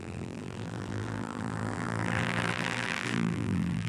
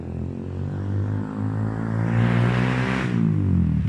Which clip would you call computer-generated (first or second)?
first